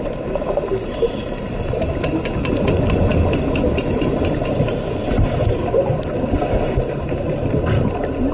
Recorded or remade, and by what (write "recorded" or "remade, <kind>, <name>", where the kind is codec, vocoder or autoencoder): recorded